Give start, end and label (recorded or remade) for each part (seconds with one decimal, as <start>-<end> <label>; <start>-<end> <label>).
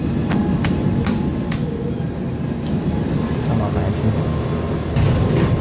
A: 0.0-5.6 recorded